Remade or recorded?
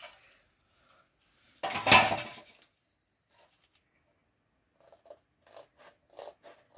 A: recorded